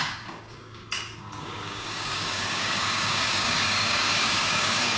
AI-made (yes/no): yes